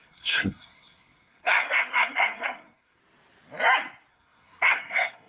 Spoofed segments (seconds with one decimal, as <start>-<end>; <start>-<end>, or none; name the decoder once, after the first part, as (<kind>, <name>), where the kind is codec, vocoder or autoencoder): 0.0-3.0 (codec, SNAC); 4.1-5.3